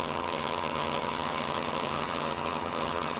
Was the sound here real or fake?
fake